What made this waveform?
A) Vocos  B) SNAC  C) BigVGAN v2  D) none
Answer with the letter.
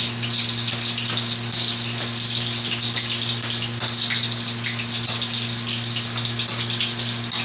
D